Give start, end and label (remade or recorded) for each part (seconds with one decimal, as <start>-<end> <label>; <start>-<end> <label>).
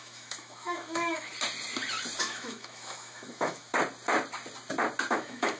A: 0.0-1.3 remade; 1.3-2.2 recorded; 2.2-3.7 remade; 3.7-5.1 recorded; 5.1-5.6 remade